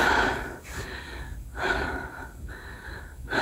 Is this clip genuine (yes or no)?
no